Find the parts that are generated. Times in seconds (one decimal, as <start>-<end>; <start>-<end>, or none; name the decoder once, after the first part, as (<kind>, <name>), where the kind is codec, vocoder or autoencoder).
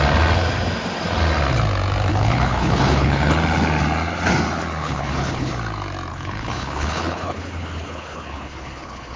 2.1-3.3 (codec, HILCodec); 4.8-5.5; 6.1-9.2